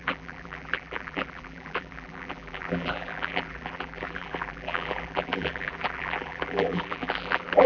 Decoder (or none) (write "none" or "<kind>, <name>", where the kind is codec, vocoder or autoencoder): vocoder, BigVGAN v2